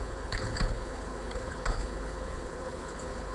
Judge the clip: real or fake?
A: fake